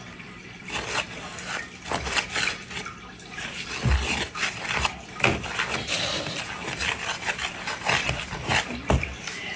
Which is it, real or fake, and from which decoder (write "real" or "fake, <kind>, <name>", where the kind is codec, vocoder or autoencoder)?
fake, vocoder, BigVGAN v2